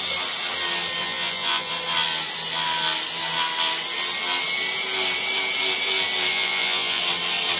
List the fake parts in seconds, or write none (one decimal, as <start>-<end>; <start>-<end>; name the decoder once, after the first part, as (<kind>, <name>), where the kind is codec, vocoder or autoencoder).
1.0-1.7 (vocoder, Vocos); 6.3-7.0